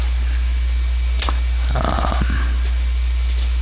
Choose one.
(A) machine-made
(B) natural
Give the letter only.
B